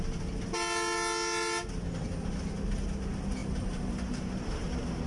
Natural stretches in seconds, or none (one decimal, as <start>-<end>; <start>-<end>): 0.0-3.4; 4.6-5.1